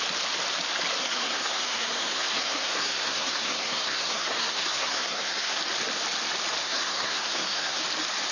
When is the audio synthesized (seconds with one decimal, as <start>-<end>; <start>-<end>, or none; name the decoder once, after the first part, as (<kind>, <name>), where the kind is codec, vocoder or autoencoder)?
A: 1.0-5.6 (codec, SNAC); 6.6-7.8